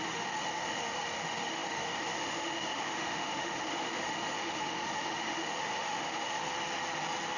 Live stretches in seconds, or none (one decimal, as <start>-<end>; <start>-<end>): 6.4-7.4